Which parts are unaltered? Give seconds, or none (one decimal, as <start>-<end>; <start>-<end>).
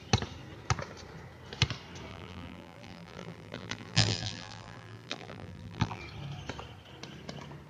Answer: 0.0-2.1; 6.0-7.7